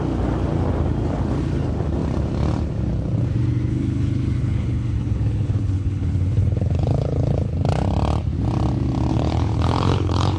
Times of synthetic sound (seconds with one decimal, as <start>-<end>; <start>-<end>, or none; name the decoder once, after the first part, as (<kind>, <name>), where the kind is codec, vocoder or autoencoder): 3.7-7.5 (codec, HILCodec); 9.1-10.4